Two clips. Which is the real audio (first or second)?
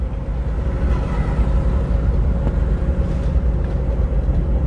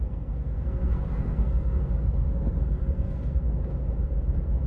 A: first